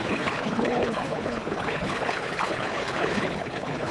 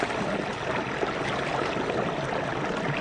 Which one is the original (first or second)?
second